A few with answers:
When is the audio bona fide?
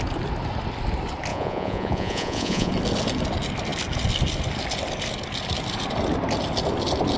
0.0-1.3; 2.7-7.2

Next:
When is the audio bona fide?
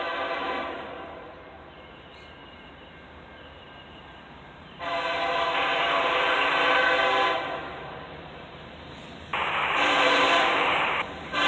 none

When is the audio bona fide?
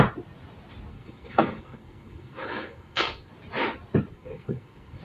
0.0-0.9; 3.3-4.1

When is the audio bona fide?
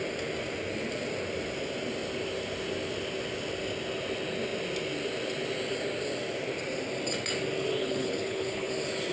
0.0-7.8; 8.7-9.1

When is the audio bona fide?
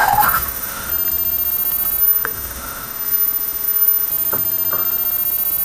0.9-2.0; 4.1-5.6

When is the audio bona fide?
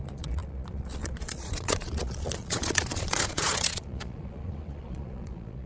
none